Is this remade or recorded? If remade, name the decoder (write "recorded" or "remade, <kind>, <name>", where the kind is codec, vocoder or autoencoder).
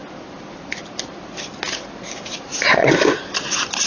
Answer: recorded